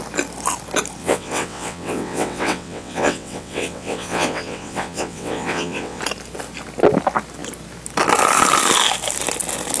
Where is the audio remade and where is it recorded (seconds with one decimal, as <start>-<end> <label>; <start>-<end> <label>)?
0.0-1.0 recorded; 1.0-6.0 remade; 6.0-9.8 recorded